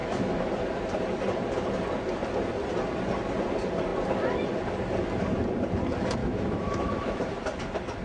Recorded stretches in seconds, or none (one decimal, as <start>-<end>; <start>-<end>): 0.5-6.2; 7.3-8.0